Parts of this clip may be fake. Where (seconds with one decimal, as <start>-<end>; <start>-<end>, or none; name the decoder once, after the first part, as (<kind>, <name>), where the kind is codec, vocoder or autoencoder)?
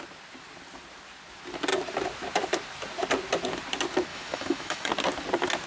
4.1-4.9 (autoencoder, DAC-VAE)